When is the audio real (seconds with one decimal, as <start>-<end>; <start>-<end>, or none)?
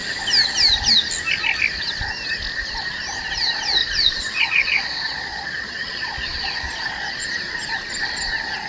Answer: 0.0-3.8; 7.1-8.7